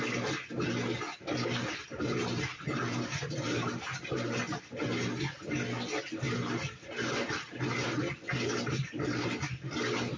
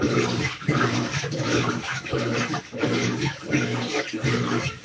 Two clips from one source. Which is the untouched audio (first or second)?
first